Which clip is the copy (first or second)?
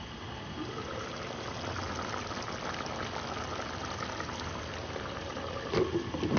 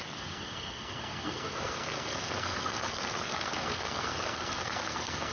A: second